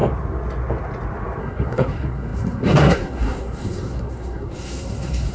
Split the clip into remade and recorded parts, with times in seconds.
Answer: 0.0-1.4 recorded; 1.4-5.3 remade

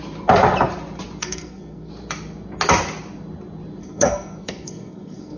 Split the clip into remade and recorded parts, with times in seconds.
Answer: 0.0-1.2 recorded; 1.2-1.9 remade; 1.9-3.8 recorded; 3.8-5.4 remade

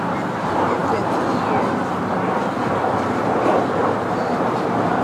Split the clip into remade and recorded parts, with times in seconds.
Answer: 0.0-0.8 remade; 0.8-3.8 recorded; 3.8-5.0 remade

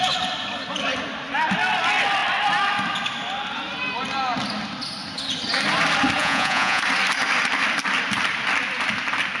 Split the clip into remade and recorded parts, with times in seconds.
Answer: 0.0-6.2 recorded; 6.2-6.8 remade; 6.8-9.4 recorded

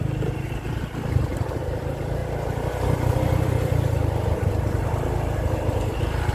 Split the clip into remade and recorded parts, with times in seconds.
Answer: 0.0-2.2 remade; 2.2-4.2 recorded; 4.2-6.3 remade

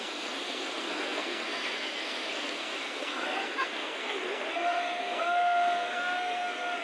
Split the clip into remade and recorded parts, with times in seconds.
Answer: 0.0-6.8 remade

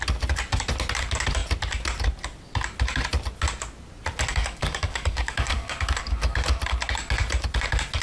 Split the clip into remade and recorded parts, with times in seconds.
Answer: 0.0-4.3 recorded; 4.3-6.6 remade; 6.6-8.0 recorded